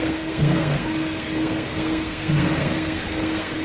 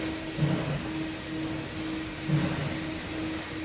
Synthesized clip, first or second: first